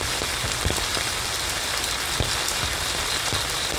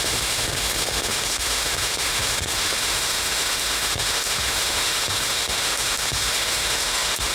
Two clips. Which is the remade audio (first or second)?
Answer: second